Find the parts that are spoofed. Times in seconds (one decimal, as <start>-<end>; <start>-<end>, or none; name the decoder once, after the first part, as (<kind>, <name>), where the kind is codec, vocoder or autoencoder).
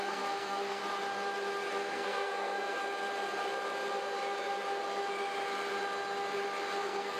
0.0-0.8 (codec, SNAC); 1.7-2.8; 6.8-7.2